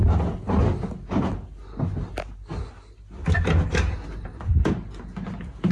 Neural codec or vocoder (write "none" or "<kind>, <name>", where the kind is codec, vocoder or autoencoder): none